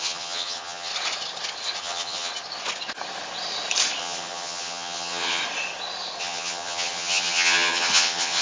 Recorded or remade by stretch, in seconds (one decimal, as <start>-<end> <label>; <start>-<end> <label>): 0.0-0.9 remade; 0.9-1.8 recorded; 1.8-2.3 remade; 2.3-4.0 recorded; 4.0-5.4 remade; 5.4-6.2 recorded; 6.2-8.4 remade